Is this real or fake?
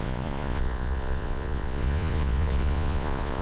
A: fake